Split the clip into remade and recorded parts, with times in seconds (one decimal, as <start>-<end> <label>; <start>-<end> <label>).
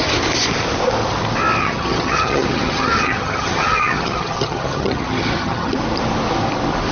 0.0-1.6 recorded; 1.6-5.7 remade; 5.7-6.9 recorded